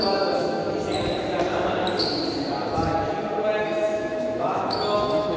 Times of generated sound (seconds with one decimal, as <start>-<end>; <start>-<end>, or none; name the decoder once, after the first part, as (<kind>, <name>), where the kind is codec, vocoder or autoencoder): 0.0-0.6 (autoencoder, DAC-VAE); 3.6-5.4